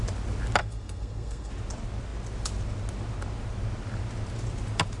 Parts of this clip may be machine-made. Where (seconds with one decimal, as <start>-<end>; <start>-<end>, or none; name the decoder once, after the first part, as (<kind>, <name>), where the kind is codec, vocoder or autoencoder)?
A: 0.6-1.5 (codec, SNAC)

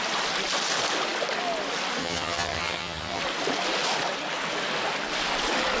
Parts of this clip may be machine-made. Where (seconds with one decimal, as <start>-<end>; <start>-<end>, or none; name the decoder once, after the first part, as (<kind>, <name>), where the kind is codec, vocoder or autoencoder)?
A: 2.0-3.2 (vocoder, HiFi-GAN)

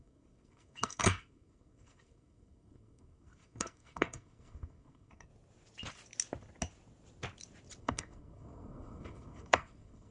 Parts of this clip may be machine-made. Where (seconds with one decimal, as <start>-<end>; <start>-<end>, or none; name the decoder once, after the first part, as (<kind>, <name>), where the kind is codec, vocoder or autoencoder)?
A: 0.0-5.3 (codec, SNAC); 7.8-10.1